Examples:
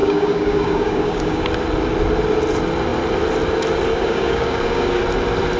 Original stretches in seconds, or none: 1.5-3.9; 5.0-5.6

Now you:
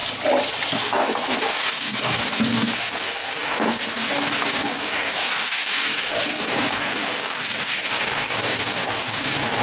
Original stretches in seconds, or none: 0.0-0.8

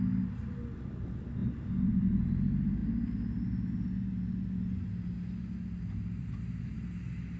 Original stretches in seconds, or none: 0.0-7.4

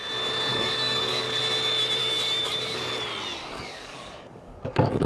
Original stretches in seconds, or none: 0.0-0.5; 1.4-2.0; 2.9-3.4

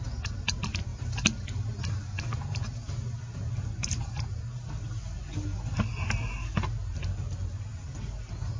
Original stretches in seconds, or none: 0.0-8.6